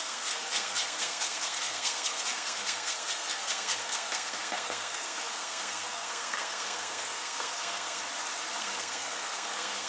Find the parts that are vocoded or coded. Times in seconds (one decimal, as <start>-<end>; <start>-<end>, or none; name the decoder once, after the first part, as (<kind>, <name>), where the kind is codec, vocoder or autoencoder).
0.0-8.0 (codec, SNAC); 8.6-9.9